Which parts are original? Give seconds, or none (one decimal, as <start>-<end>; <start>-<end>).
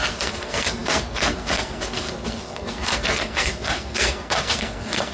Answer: none